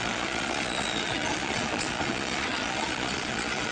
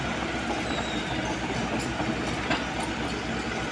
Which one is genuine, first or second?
second